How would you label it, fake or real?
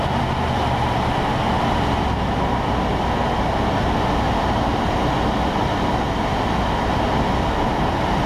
real